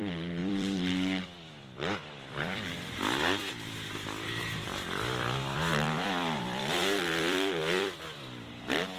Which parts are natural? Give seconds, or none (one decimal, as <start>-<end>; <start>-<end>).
none